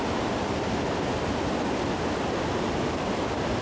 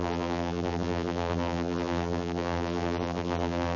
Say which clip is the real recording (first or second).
first